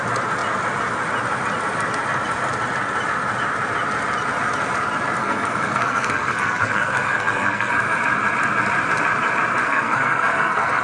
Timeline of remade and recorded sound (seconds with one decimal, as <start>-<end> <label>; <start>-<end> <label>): 0.0-5.2 recorded; 5.2-7.7 remade; 7.7-9.6 recorded; 9.6-10.8 remade